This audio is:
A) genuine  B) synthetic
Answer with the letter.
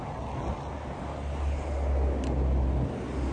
A